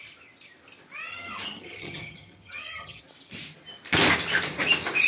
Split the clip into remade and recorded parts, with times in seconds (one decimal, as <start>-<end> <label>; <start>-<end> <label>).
0.0-1.1 recorded; 1.1-3.0 remade; 3.0-5.1 recorded